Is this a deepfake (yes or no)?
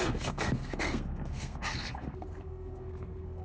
yes